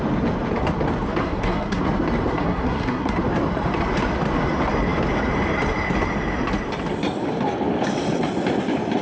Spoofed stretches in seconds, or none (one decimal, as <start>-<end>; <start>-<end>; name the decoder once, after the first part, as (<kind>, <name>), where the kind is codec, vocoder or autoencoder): 1.2-1.8 (codec, SNAC); 2.3-3.2